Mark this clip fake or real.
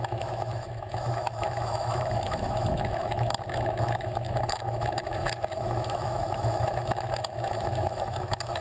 fake